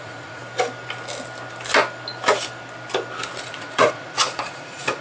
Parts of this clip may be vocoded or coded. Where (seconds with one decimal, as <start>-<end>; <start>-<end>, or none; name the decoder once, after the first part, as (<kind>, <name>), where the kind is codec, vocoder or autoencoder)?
0.0-0.4 (vocoder, Vocos); 3.4-5.0